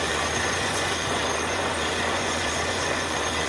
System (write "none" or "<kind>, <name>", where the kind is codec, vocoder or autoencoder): vocoder, Vocos